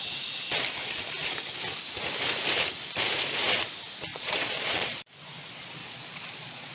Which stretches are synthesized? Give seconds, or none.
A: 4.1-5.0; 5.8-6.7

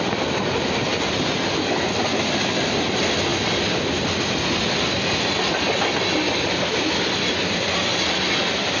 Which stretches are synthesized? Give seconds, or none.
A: none

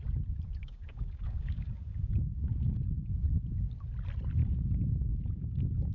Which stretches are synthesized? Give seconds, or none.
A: 0.6-3.1; 4.4-5.9

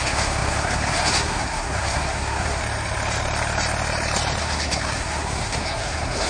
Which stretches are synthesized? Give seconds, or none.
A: 0.0-2.6; 4.4-6.3

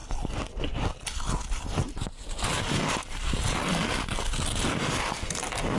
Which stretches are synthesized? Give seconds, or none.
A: none

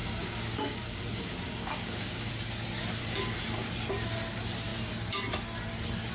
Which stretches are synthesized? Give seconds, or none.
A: 0.0-2.3; 3.0-3.7

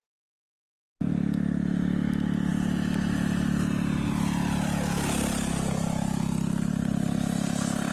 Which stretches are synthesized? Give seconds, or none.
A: none

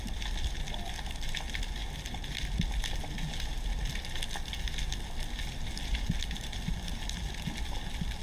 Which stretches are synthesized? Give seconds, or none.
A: none